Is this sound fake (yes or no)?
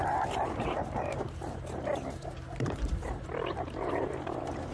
yes